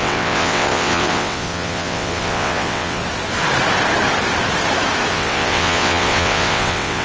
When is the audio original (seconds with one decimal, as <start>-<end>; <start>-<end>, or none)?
3.0-5.1

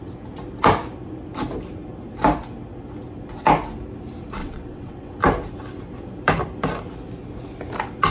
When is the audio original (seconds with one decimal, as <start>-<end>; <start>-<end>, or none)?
0.0-4.4; 5.1-8.1

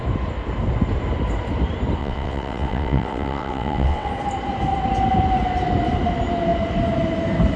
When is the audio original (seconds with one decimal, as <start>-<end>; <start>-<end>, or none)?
0.0-2.0; 4.1-7.6

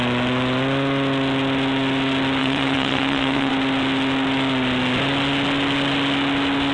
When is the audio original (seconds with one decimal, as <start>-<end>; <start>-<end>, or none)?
0.0-2.4; 3.5-6.7

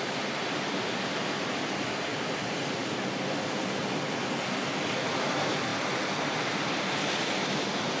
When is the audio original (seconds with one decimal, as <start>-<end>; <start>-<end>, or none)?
0.0-8.0

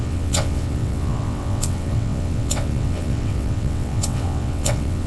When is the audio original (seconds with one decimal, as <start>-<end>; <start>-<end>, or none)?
none

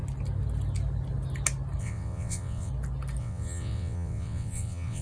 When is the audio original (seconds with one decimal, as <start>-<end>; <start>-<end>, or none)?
0.0-1.8; 2.7-3.2